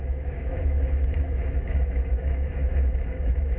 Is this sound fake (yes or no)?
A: yes